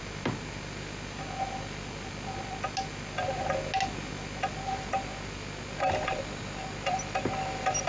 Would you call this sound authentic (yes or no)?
yes